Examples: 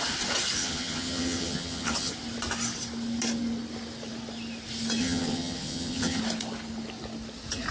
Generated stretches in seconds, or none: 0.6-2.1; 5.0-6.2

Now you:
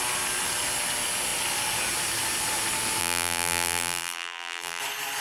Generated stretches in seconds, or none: 3.0-4.8

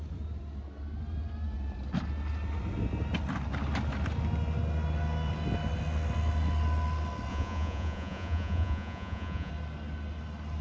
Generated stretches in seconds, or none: 7.3-9.5

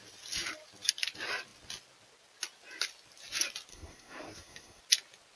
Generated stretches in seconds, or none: 3.7-4.8

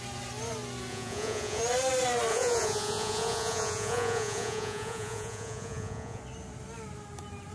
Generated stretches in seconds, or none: 0.9-1.6; 2.3-6.2

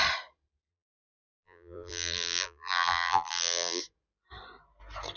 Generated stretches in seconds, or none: 0.7-3.8